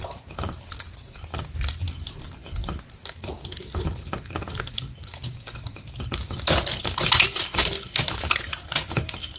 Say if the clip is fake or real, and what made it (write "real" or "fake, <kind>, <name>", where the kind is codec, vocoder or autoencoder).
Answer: real